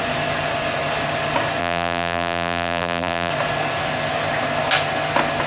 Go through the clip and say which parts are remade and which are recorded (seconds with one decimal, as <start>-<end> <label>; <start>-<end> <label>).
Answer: 0.0-1.6 recorded; 1.6-3.3 remade; 3.3-5.5 recorded